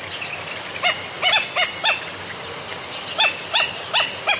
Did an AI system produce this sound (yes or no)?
no